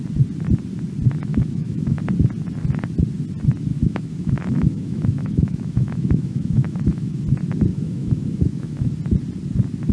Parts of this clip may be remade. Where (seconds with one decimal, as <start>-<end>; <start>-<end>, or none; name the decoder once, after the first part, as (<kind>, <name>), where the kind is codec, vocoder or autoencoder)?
1.3-2.0 (autoencoder, DAC-VAE); 3.7-7.2; 7.7-8.9